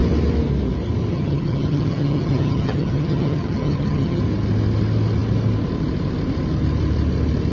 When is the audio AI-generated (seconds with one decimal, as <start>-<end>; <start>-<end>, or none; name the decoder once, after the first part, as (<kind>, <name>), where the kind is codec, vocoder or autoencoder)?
1.1-4.2 (vocoder, HiFi-GAN)